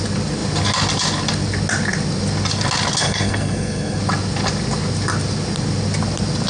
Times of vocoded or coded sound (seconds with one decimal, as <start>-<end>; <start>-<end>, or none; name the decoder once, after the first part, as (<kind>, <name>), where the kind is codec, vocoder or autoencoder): 3.0-4.0 (codec, SNAC)